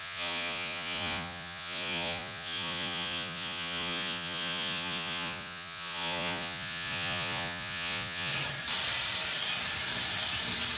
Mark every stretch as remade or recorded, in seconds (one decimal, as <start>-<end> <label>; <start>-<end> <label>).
0.0-8.3 remade; 8.3-10.8 recorded